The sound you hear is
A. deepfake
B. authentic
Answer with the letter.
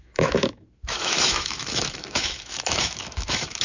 A